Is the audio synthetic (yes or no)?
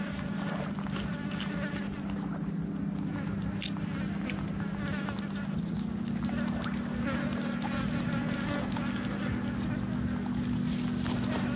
no